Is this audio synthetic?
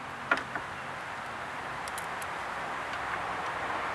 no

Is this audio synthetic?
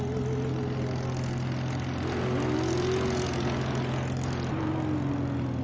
no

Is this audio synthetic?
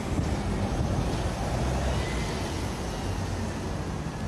no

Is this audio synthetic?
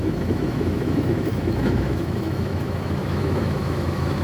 yes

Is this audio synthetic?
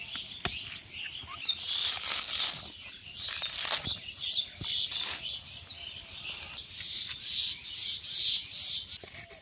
no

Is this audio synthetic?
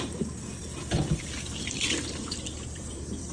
yes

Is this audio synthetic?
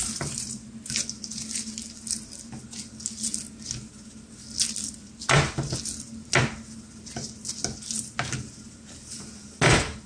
no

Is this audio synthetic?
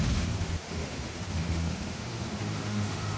yes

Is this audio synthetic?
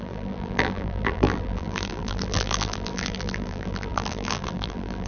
yes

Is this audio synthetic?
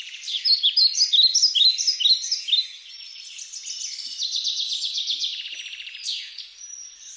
no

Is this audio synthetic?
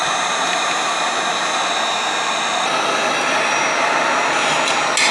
no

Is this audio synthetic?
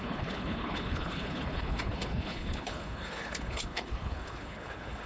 yes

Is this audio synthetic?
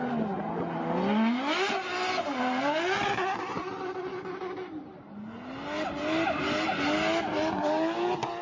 no